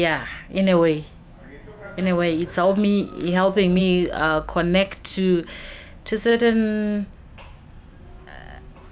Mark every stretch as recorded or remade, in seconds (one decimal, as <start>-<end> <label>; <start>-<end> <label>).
0.0-6.3 remade; 6.3-8.9 recorded